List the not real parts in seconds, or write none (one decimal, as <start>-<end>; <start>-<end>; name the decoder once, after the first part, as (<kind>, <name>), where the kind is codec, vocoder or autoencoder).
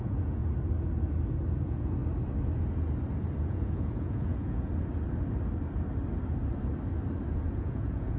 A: 0.0-0.4 (vocoder, Vocos); 1.6-2.0; 3.4-4.7; 7.3-8.2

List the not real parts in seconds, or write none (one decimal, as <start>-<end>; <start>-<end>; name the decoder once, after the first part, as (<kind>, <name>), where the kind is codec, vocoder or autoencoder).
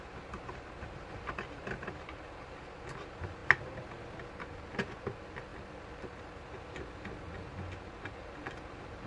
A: 5.5-6.8 (vocoder, BigVGAN v2)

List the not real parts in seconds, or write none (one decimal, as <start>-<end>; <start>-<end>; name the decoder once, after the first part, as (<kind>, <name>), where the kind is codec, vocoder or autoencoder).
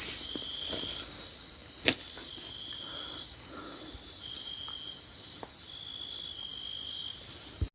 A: none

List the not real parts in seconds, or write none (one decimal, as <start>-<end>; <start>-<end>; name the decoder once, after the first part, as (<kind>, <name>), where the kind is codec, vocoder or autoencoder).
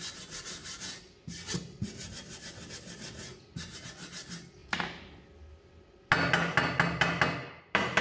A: none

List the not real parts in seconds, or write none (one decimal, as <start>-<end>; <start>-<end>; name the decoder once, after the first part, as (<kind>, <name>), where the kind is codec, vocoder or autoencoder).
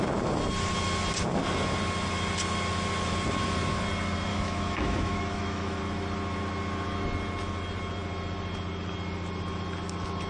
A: 4.3-5.8 (autoencoder, DAC-VAE)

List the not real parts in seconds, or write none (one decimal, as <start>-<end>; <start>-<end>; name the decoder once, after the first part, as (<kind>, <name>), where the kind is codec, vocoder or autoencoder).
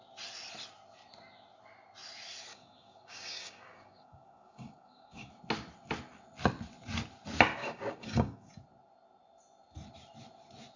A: 2.5-5.3 (codec, DAC); 7.6-8.5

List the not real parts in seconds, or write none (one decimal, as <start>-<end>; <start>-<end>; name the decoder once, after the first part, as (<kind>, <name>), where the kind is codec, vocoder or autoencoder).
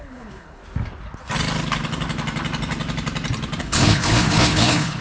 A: 0.0-0.6 (codec, HILCodec); 3.6-5.0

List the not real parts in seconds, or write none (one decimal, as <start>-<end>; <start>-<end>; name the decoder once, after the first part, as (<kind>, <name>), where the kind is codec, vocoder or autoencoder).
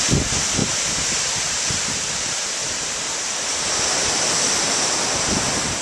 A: 0.6-1.4 (vocoder, BigVGAN v2); 2.6-4.9